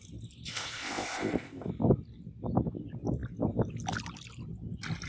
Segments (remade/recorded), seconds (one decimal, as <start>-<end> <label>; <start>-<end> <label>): 0.0-0.5 recorded; 0.5-1.7 remade; 1.7-5.1 recorded